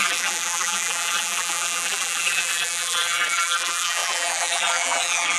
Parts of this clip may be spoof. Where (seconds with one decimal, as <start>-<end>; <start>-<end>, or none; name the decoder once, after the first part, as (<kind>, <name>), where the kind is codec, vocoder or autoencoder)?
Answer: 0.0-5.4 (vocoder, BigVGAN v2)